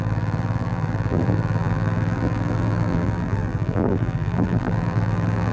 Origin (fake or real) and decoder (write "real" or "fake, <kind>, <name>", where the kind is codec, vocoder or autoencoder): fake, vocoder, BigVGAN v2